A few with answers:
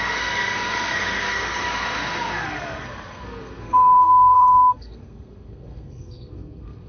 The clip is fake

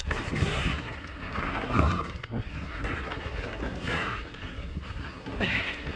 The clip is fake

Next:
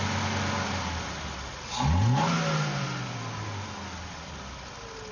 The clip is real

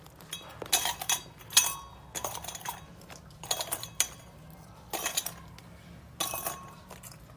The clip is real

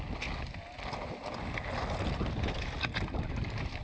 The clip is real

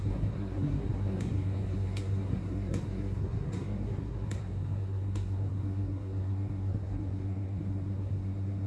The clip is fake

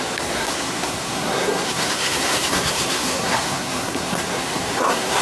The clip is fake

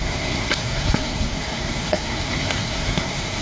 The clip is fake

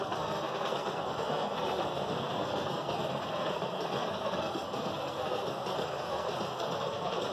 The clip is fake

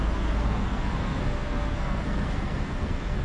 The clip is fake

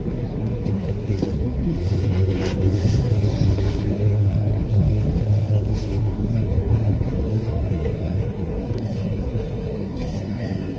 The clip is fake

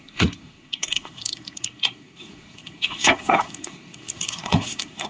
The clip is fake